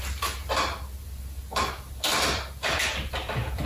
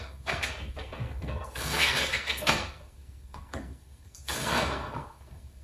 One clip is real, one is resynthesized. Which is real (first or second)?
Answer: first